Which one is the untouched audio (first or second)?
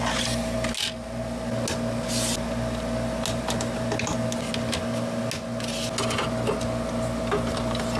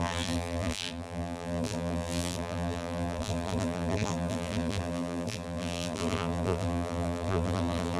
first